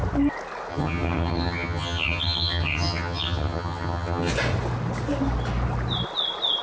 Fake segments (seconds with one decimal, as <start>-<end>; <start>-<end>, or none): 0.7-4.3